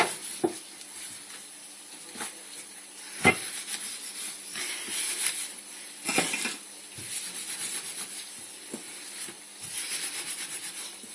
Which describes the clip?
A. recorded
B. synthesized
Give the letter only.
A